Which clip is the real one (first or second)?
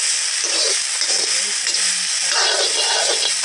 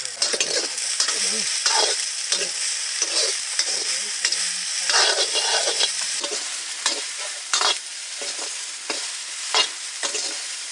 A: first